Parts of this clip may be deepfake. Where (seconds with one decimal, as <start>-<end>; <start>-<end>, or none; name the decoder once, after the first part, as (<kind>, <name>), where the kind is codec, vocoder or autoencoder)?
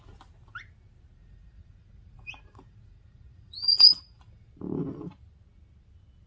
1.2-4.5 (vocoder, Vocos)